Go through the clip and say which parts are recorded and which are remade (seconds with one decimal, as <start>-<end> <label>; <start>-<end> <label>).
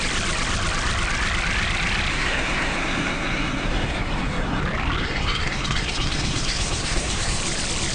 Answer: 0.0-2.1 recorded; 2.1-4.6 remade; 4.6-5.0 recorded; 5.0-7.4 remade; 7.4-7.9 recorded